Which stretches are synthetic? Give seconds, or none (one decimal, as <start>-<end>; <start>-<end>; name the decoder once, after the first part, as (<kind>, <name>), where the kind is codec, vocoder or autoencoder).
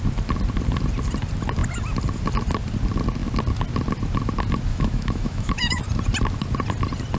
4.7-5.8 (autoencoder, DAC-VAE)